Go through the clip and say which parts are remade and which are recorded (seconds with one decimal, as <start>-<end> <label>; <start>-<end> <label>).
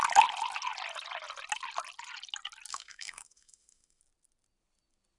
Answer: 0.0-2.7 recorded; 2.7-4.0 remade; 4.0-5.2 recorded